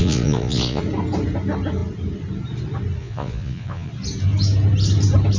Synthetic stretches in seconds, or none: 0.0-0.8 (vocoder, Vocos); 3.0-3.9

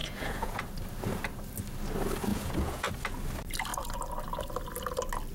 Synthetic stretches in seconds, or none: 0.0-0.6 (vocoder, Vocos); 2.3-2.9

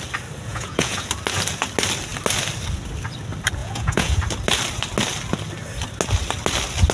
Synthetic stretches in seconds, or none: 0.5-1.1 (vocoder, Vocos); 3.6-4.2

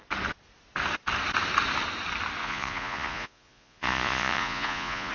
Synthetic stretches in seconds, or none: 2.4-5.1 (vocoder, Vocos)

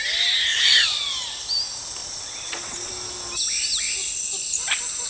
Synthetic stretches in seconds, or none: 0.5-1.0 (vocoder, Vocos); 2.0-2.9

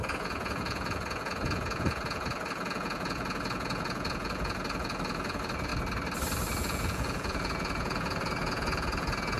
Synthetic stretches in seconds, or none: 0.0-5.7 (vocoder, Vocos); 6.6-9.4

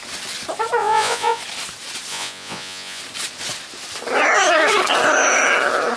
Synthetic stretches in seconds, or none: 0.8-1.4 (vocoder, Vocos); 2.1-3.0